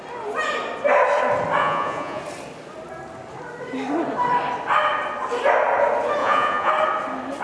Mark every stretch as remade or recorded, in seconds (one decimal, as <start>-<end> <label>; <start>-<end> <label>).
0.0-1.6 recorded; 1.6-2.2 remade; 2.2-6.2 recorded; 6.2-6.7 remade; 6.7-7.4 recorded